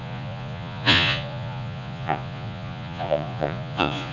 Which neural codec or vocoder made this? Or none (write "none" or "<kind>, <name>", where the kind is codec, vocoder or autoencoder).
vocoder, Vocos